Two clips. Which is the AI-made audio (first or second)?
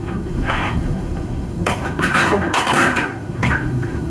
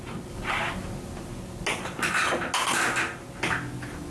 first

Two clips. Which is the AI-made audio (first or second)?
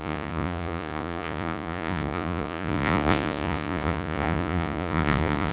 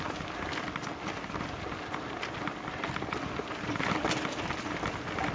first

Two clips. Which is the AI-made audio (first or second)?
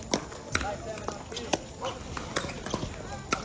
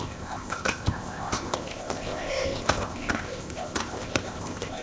second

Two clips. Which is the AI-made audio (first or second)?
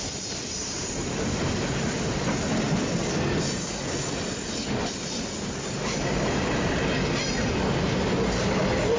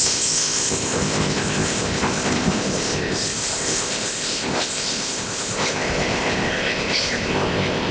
second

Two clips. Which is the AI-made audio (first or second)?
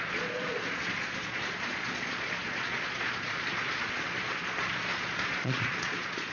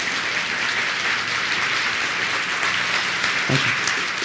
first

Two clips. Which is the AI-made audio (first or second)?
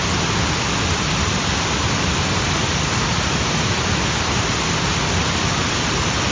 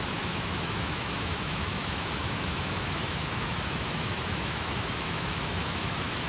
second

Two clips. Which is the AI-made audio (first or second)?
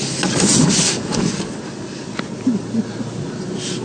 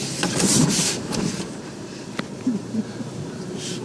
second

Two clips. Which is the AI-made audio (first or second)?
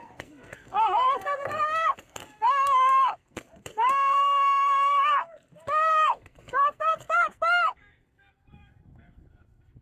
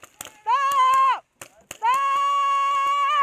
first